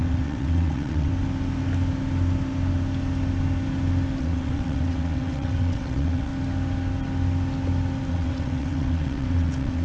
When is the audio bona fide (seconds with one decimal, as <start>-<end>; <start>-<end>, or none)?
1.1-4.2; 6.3-8.1